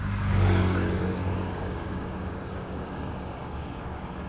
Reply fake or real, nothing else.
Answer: fake